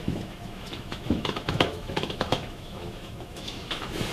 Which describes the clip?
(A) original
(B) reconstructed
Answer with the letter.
B